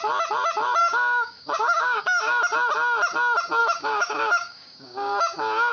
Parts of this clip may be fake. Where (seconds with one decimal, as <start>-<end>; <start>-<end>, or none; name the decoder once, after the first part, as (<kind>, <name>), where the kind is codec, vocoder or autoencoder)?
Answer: 0.8-2.4 (codec, DAC); 3.6-5.7